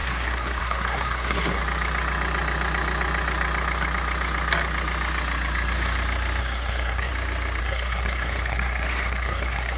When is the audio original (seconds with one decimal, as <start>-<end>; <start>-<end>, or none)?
1.6-6.4; 7.1-7.6